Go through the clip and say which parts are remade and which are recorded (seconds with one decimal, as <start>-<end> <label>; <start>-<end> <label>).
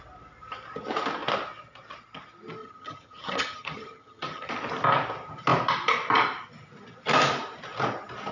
0.0-2.6 recorded; 2.6-4.5 remade; 4.5-8.3 recorded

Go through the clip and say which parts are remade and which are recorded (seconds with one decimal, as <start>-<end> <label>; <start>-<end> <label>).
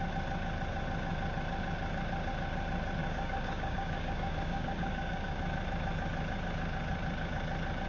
0.0-3.0 recorded; 3.0-5.4 remade; 5.4-7.9 recorded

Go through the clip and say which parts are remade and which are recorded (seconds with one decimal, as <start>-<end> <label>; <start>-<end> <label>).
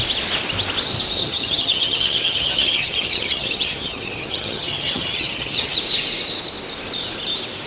0.0-1.2 recorded; 1.2-5.8 remade; 5.8-7.7 recorded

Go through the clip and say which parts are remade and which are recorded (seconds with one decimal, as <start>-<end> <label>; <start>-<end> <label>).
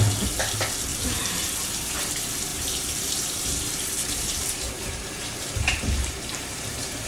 0.0-0.9 recorded; 0.9-2.1 remade; 2.1-2.5 recorded; 2.5-7.1 remade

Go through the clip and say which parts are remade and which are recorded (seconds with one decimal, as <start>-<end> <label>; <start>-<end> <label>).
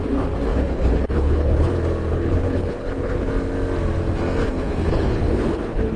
0.0-0.5 recorded; 0.5-1.7 remade; 1.7-2.1 recorded; 2.1-3.3 remade; 3.3-4.4 recorded; 4.4-6.0 remade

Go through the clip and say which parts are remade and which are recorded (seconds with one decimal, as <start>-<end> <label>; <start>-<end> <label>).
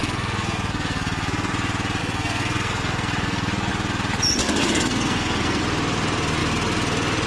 0.0-1.5 remade; 1.5-2.0 recorded; 2.0-3.7 remade; 3.7-4.4 recorded; 4.4-5.6 remade; 5.6-7.3 recorded